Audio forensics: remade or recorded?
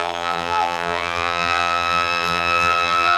remade